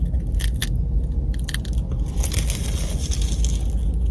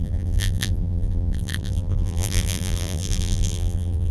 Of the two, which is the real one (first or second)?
first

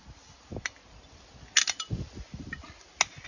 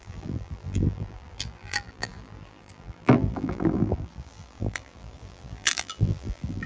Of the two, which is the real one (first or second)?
first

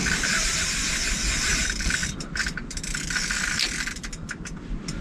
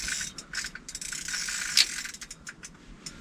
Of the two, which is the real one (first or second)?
second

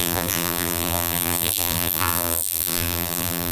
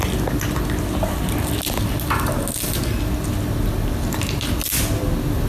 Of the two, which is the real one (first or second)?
second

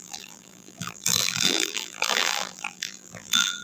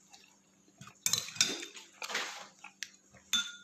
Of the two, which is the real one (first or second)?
second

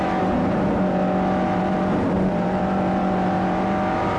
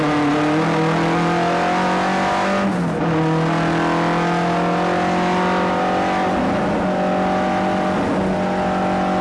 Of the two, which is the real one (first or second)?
second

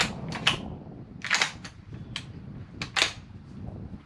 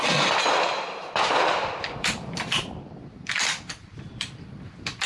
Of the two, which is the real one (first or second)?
first